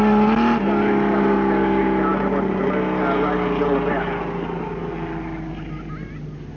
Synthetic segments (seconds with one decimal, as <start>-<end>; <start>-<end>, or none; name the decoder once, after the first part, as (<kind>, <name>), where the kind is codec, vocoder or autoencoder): none